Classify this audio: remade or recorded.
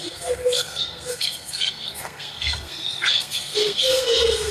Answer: remade